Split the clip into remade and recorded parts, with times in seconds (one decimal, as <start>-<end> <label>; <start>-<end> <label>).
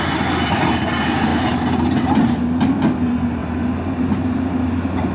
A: 0.0-1.3 recorded; 1.3-2.3 remade; 2.3-3.4 recorded; 3.4-4.4 remade; 4.4-5.1 recorded